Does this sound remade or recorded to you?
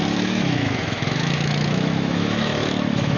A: remade